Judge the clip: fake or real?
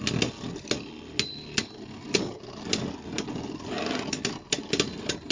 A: real